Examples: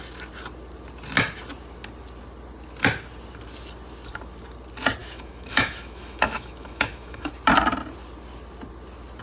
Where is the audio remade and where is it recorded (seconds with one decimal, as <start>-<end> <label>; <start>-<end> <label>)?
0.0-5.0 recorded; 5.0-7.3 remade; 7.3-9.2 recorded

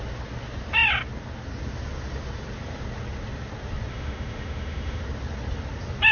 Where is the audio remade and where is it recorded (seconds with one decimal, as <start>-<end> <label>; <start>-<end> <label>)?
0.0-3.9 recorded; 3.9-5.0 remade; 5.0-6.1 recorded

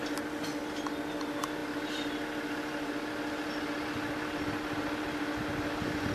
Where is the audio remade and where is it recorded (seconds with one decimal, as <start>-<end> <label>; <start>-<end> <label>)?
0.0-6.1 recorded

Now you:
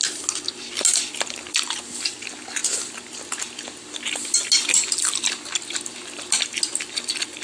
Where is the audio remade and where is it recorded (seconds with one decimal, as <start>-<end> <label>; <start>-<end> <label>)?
0.0-7.4 recorded